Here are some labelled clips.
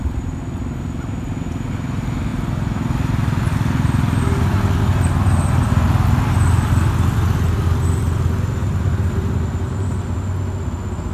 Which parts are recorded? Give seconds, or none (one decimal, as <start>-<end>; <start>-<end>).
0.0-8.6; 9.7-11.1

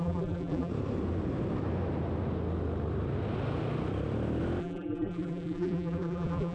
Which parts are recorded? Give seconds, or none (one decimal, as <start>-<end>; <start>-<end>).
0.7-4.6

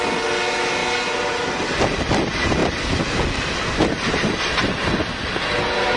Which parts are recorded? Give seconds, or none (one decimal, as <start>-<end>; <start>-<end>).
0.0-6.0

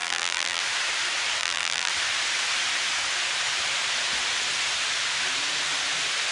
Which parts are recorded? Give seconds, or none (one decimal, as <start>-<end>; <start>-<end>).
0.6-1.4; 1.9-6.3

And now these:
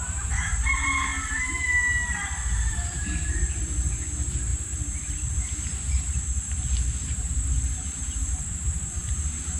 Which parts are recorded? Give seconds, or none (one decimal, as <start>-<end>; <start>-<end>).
1.1-2.7

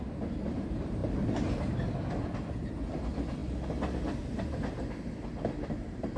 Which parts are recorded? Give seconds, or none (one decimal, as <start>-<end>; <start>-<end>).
0.0-6.2